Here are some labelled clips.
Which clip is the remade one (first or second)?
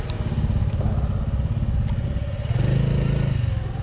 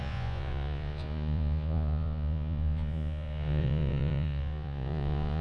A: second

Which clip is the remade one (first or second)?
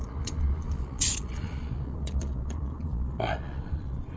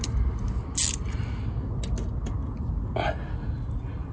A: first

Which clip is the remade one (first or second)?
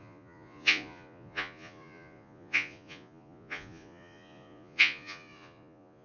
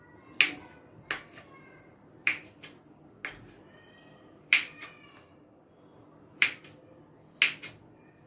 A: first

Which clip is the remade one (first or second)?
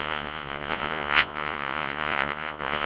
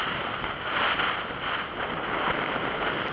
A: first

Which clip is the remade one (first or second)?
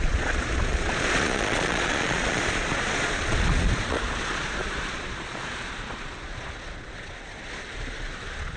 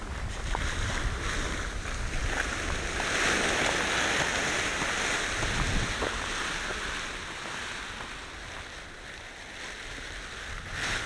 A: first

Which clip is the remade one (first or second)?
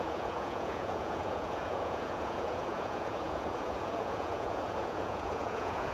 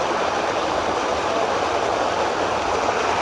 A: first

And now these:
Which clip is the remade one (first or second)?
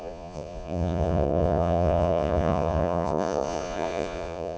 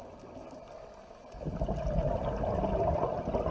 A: first